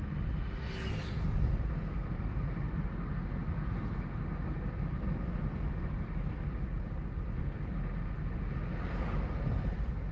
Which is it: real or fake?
real